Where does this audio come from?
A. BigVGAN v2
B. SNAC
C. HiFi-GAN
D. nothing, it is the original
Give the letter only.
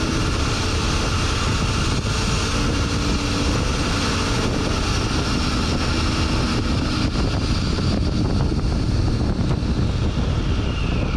D